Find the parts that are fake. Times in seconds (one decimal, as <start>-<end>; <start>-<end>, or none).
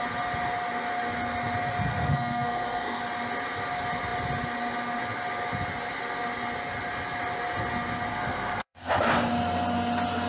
1.9-3.0; 8.1-9.3